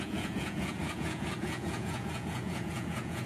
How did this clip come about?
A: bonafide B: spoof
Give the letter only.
B